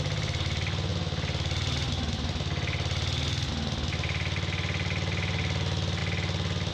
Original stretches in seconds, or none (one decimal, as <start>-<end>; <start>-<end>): 0.0-6.7